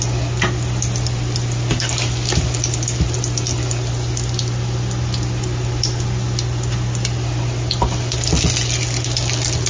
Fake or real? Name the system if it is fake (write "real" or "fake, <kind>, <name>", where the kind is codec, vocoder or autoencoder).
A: real